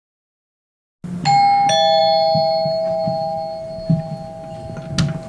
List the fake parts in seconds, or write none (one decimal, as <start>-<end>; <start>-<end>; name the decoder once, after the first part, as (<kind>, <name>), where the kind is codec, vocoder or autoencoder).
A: none